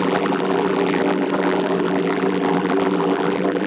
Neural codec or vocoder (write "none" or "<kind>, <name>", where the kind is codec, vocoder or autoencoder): vocoder, BigVGAN v2